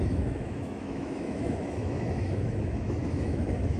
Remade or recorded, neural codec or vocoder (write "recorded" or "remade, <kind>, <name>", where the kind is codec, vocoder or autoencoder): remade, autoencoder, DAC-VAE